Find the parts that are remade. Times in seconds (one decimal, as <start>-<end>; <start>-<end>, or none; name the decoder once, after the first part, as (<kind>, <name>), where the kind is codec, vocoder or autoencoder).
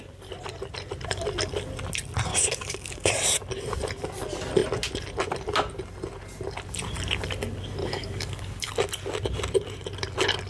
2.3-3.1 (codec, DAC); 7.8-8.7